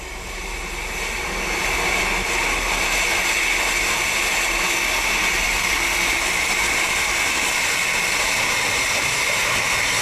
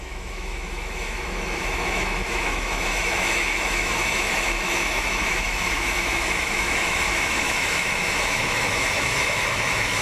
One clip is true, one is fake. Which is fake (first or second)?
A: second